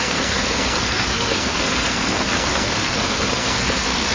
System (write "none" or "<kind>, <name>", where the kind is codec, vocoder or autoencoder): codec, SNAC